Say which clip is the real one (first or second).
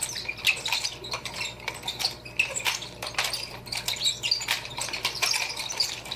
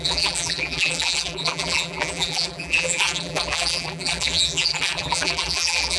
first